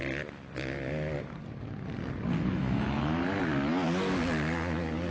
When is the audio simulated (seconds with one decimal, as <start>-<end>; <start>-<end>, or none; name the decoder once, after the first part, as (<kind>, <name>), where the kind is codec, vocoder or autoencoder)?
2.4-3.2 (autoencoder, DAC-VAE)